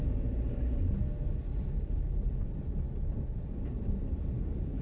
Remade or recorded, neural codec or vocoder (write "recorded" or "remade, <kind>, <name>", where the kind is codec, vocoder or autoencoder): recorded